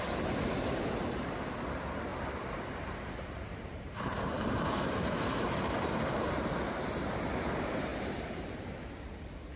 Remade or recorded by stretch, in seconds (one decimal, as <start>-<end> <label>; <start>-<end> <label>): 0.0-2.1 recorded; 2.1-6.6 remade; 6.6-9.6 recorded